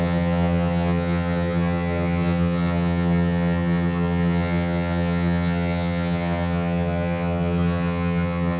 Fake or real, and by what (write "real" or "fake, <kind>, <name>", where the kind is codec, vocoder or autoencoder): fake, vocoder, HiFi-GAN